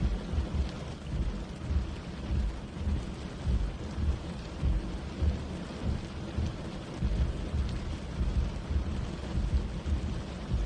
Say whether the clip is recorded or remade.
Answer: recorded